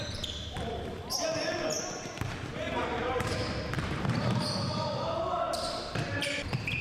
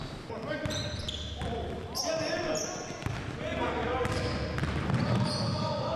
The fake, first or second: first